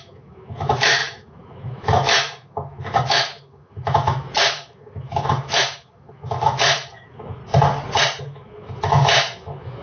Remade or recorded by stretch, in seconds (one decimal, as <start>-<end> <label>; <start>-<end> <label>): 0.0-7.4 remade; 7.4-8.2 recorded; 8.2-9.8 remade